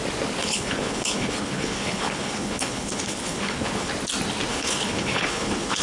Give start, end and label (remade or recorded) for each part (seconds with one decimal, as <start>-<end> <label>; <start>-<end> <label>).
0.0-0.4 recorded; 0.4-3.9 remade; 3.9-4.5 recorded; 4.5-5.8 remade